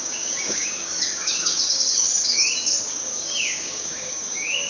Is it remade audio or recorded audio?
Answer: remade